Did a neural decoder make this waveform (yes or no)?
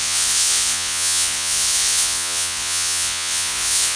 yes